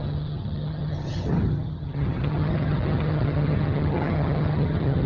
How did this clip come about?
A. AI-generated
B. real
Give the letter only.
A